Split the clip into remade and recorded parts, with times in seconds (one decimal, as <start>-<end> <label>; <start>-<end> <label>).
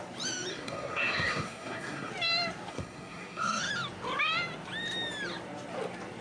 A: 0.0-0.5 recorded; 0.5-2.1 remade; 2.1-2.7 recorded; 2.7-3.6 remade; 3.6-6.2 recorded